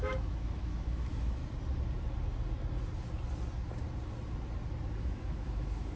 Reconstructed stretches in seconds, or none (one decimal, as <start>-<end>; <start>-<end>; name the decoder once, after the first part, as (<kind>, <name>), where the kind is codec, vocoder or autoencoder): 0.0-1.4 (autoencoder, DAC-VAE); 5.0-6.0